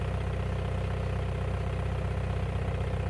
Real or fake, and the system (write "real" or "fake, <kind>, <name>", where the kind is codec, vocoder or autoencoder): real